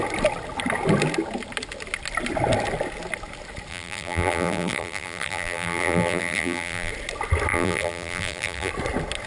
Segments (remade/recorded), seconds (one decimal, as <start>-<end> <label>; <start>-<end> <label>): 0.0-3.7 recorded; 3.7-6.9 remade; 6.9-7.5 recorded; 7.5-8.7 remade; 8.7-9.3 recorded